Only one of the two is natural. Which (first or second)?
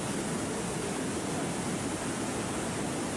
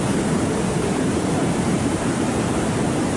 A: first